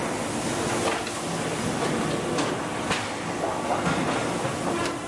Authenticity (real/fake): real